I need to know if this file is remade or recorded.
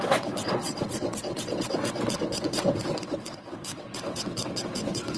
remade